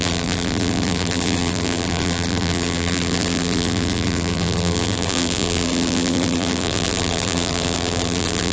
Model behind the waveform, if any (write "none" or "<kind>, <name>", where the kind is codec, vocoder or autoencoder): vocoder, BigVGAN v2